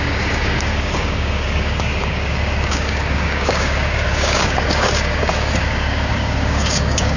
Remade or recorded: remade